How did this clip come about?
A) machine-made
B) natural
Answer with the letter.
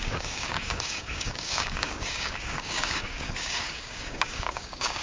A